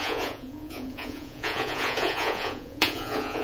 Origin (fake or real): fake